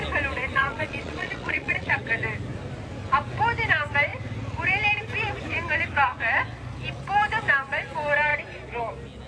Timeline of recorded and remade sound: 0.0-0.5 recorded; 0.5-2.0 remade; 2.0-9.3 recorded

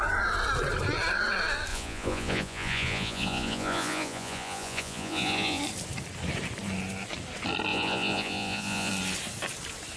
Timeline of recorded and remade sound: 0.0-1.7 recorded; 1.7-5.6 remade; 5.6-7.7 recorded; 7.7-8.9 remade; 8.9-10.0 recorded

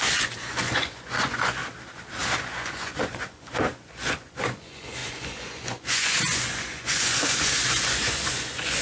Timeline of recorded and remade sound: 0.0-1.6 remade; 1.6-2.4 recorded; 2.4-8.8 remade

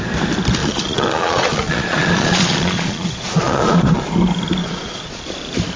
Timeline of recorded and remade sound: 0.0-0.6 recorded; 0.6-4.1 remade; 4.1-4.6 recorded; 4.6-5.2 remade; 5.2-5.8 recorded

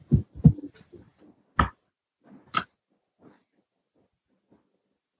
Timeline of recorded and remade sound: 0.0-5.2 recorded

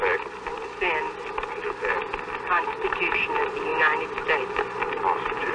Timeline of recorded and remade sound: 0.0-5.5 recorded

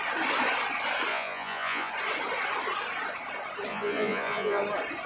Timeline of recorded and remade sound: 0.0-1.1 recorded; 1.1-1.9 remade; 1.9-3.7 recorded; 3.7-4.6 remade; 4.6-5.1 recorded